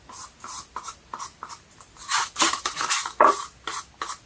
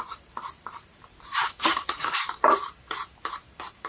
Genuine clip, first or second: first